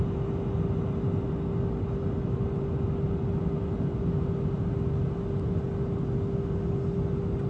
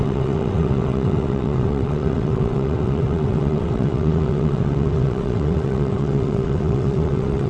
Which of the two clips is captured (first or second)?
first